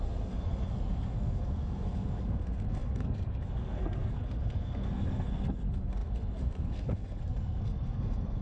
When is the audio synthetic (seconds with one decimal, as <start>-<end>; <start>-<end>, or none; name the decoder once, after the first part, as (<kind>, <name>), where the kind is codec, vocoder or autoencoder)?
0.0-8.4 (codec, SNAC)